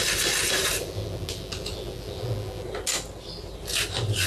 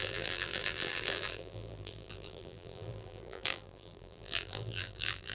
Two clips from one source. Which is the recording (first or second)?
first